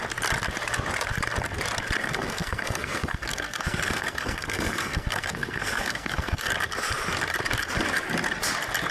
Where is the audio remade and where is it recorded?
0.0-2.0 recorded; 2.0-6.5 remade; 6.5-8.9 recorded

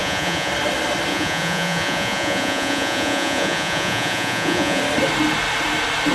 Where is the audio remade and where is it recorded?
0.0-0.5 remade; 0.5-1.1 recorded; 1.1-4.8 remade; 4.8-6.1 recorded

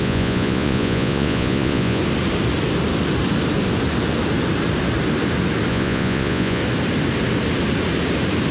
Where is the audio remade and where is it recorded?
0.0-2.0 remade; 2.0-5.7 recorded; 5.7-6.6 remade; 6.6-8.5 recorded